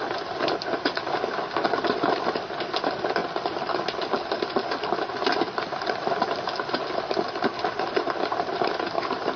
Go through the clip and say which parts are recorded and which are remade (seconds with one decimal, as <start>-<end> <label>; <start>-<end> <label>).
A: 0.0-9.4 recorded